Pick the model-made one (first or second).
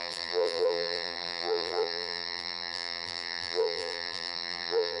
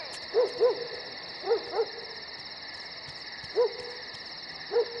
first